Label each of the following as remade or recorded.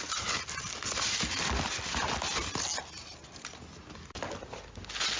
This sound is recorded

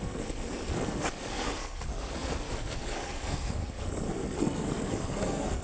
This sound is remade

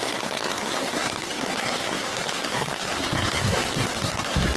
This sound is remade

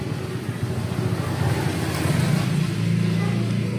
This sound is recorded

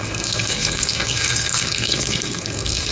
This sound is remade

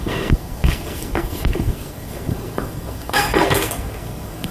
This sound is remade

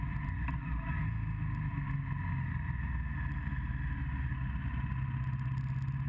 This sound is recorded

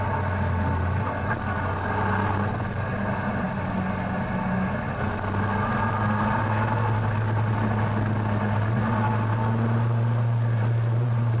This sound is recorded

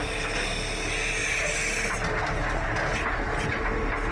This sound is recorded